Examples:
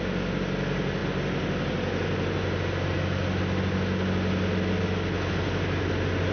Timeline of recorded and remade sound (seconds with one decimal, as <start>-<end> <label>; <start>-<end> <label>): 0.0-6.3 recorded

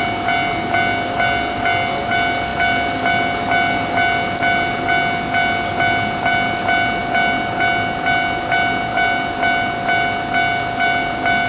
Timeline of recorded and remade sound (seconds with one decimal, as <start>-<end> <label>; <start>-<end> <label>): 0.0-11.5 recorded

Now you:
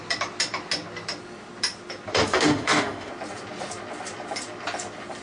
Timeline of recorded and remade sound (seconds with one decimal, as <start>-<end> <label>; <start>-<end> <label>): 0.0-2.2 recorded; 2.2-3.1 remade; 3.1-5.2 recorded

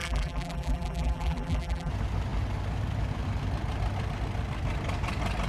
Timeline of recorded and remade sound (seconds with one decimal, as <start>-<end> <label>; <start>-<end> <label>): 0.0-1.9 remade; 1.9-5.5 recorded

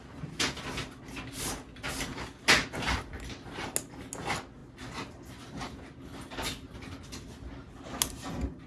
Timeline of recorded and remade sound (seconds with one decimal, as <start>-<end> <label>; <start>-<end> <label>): 0.0-8.7 recorded

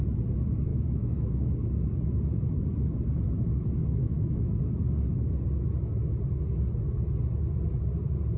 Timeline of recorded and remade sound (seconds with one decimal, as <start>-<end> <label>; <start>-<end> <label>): 0.0-0.7 recorded; 0.7-1.7 remade; 1.7-3.8 recorded; 3.8-4.6 remade; 4.6-8.4 recorded

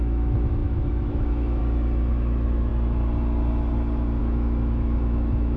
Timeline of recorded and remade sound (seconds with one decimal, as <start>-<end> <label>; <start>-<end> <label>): 0.0-1.6 remade; 1.6-2.1 recorded; 2.1-2.7 remade; 2.7-4.2 recorded; 4.2-5.6 remade

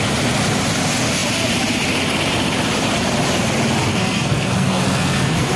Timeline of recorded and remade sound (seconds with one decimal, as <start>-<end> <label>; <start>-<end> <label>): 0.0-3.9 recorded; 3.9-5.6 remade